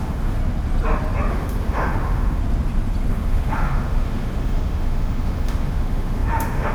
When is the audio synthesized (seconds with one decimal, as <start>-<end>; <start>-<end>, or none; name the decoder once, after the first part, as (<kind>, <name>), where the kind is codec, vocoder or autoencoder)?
0.0-0.4 (autoencoder, DAC-VAE); 1.3-2.4; 3.1-6.7